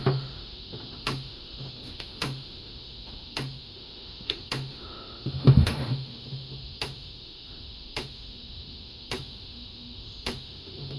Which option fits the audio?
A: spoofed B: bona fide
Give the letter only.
A